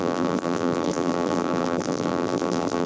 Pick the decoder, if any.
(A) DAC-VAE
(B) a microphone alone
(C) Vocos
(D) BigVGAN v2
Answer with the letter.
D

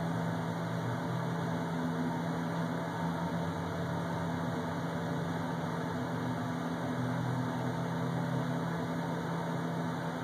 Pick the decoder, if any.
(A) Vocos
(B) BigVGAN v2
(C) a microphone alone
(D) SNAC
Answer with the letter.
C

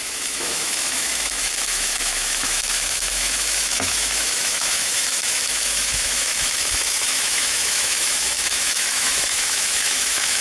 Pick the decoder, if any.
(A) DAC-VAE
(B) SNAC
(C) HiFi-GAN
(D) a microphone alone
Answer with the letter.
A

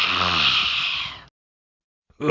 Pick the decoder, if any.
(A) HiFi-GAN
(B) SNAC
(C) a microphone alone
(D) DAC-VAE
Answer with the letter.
C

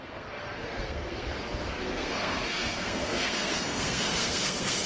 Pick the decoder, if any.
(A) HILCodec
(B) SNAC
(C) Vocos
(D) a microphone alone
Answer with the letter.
B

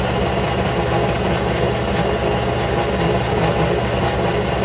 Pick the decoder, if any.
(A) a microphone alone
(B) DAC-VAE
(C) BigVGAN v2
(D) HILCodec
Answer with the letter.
A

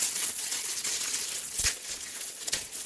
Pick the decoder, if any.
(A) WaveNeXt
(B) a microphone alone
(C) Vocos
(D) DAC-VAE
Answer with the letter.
A